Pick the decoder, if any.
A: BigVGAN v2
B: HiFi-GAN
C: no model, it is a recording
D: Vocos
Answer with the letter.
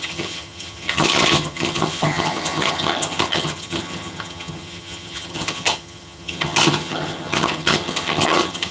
B